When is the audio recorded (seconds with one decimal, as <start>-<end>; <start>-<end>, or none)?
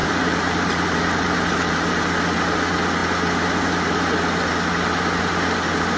2.1-6.0